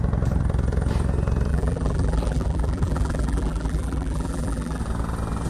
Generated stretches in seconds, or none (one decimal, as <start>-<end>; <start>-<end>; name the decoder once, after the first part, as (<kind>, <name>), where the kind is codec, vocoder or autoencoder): 1.5-4.8 (vocoder, BigVGAN v2)